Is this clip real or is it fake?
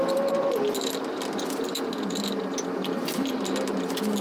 real